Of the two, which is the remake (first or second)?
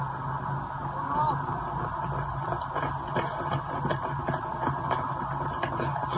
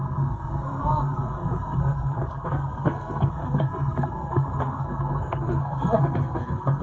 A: second